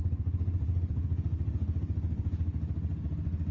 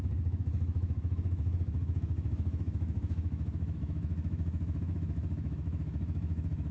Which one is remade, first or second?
second